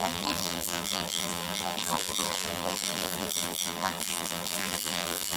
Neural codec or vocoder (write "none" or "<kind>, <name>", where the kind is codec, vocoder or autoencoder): vocoder, BigVGAN v2